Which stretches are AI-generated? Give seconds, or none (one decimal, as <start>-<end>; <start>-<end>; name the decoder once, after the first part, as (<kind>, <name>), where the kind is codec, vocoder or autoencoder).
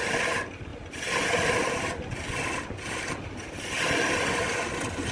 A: none